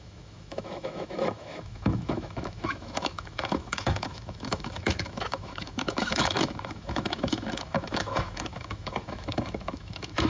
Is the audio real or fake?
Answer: fake